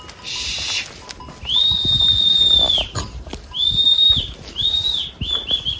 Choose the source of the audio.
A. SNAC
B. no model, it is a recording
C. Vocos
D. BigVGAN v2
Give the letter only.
B